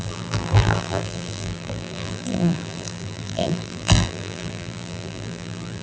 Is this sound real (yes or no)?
no